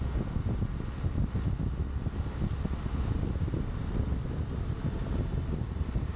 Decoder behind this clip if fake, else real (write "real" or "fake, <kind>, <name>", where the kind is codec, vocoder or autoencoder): real